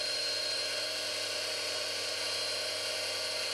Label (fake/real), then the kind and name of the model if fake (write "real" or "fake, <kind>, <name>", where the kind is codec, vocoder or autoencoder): real